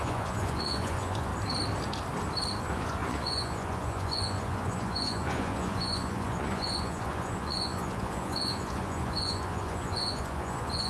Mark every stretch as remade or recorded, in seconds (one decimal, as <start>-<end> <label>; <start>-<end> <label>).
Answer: 0.0-1.3 remade; 1.3-2.6 recorded; 2.6-10.9 remade